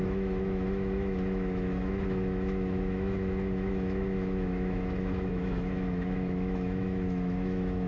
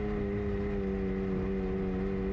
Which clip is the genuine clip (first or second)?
second